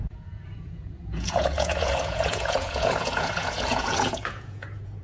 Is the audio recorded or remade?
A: remade